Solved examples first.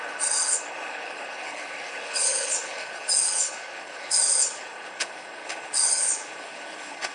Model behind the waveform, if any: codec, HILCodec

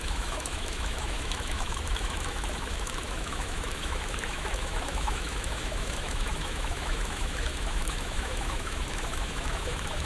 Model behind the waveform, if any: autoencoder, DAC-VAE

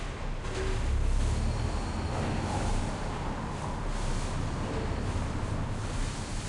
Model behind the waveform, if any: none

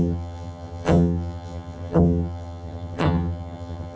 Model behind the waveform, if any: vocoder, HiFi-GAN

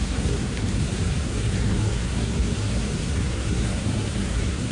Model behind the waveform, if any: codec, SNAC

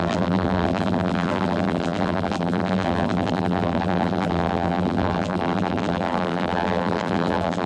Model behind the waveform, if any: vocoder, BigVGAN v2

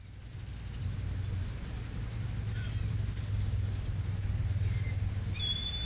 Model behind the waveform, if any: none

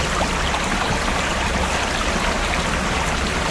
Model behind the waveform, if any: none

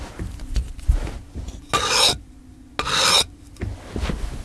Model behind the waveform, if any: none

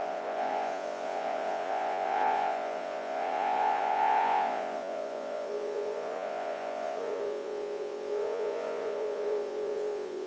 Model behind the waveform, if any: vocoder, Vocos